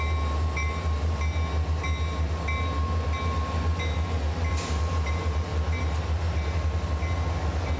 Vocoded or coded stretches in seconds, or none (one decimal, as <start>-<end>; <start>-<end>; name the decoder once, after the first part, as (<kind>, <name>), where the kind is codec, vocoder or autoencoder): none

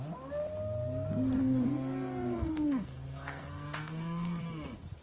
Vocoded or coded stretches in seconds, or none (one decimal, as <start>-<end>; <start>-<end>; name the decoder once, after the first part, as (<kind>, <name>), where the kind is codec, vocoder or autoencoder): 1.4-4.4 (codec, SNAC)

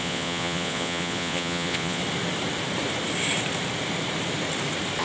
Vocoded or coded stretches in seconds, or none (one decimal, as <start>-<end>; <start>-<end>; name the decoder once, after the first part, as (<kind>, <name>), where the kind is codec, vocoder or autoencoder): 0.0-2.0 (vocoder, Vocos)

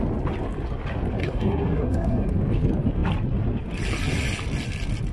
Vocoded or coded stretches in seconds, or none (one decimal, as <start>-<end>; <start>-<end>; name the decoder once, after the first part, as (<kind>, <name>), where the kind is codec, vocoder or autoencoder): 1.2-2.3 (codec, SNAC)